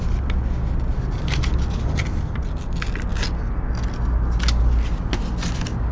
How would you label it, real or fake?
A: real